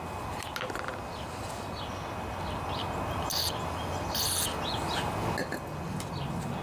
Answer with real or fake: real